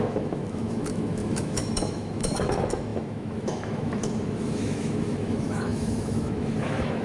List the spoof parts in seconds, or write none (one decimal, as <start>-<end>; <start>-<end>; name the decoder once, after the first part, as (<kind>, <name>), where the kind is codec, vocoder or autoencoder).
0.0-7.0 (autoencoder, DAC-VAE)